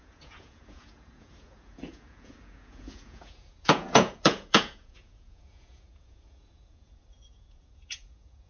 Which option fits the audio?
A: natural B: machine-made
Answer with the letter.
B